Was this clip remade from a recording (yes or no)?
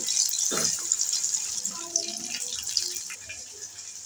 no